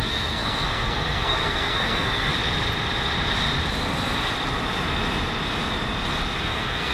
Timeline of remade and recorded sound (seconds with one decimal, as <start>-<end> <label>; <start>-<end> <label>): 0.0-2.3 remade; 2.3-6.4 recorded; 6.4-6.9 remade